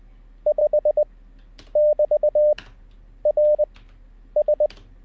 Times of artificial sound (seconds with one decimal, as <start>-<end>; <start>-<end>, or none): none